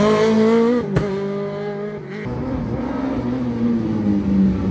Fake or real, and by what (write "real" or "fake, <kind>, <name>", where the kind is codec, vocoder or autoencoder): real